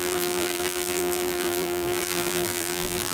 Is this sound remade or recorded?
remade